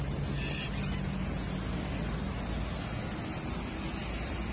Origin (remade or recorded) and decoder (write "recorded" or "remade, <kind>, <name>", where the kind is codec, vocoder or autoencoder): recorded